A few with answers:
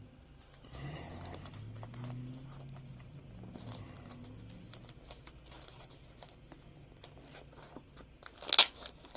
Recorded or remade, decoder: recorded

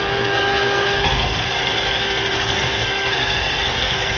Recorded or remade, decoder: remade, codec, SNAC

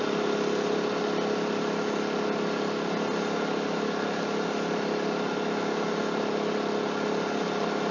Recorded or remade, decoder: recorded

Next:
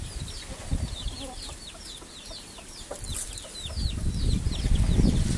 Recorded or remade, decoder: recorded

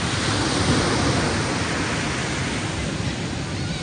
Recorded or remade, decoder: recorded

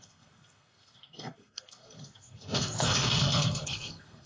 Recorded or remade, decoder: remade, codec, SNAC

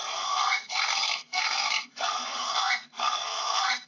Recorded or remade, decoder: remade, codec, SNAC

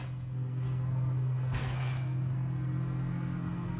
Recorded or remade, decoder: remade, codec, SNAC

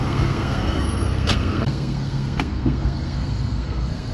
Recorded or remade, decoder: remade, codec, SNAC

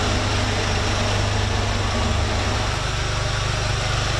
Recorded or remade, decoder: recorded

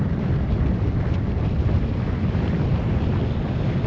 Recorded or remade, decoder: recorded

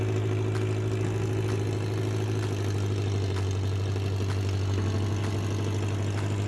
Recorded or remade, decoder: recorded